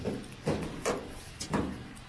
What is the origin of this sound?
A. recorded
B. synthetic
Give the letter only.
A